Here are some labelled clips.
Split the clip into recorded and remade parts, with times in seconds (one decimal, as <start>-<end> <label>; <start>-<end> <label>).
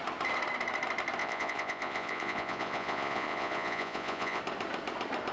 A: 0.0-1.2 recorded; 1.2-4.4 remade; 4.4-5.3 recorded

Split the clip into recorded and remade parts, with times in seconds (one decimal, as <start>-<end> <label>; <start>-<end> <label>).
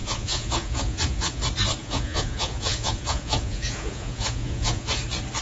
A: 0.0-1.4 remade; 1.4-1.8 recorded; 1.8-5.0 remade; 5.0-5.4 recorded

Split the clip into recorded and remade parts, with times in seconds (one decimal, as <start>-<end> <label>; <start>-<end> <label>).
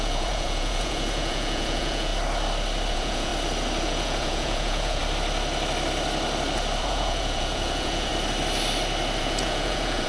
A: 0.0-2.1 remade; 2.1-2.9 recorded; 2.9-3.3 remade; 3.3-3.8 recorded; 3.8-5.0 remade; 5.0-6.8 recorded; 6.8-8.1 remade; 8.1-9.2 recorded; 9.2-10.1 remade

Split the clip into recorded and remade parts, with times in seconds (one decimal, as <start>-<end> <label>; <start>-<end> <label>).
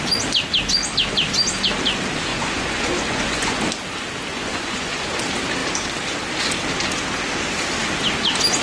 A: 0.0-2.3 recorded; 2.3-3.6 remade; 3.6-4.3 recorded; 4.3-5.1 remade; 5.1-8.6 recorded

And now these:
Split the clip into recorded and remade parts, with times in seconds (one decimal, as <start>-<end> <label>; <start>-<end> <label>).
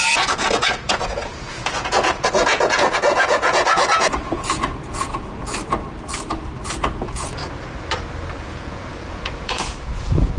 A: 0.0-5.6 remade; 5.6-7.0 recorded; 7.0-7.4 remade; 7.4-8.4 recorded; 8.4-10.4 remade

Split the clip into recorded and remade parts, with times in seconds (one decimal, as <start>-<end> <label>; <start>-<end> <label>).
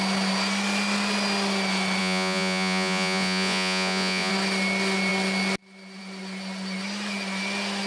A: 0.0-2.0 recorded; 2.0-4.3 remade; 4.3-7.9 recorded